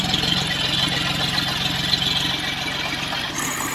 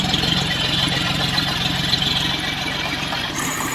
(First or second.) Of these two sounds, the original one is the first